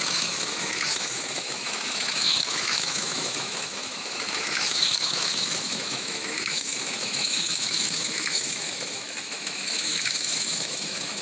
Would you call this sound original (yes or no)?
no